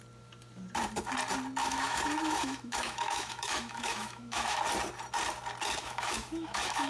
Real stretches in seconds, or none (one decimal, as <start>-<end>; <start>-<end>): 0.0-1.6; 4.6-5.8